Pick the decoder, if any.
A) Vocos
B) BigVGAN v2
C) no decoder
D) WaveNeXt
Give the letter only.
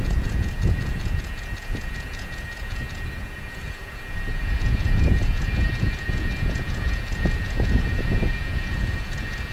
A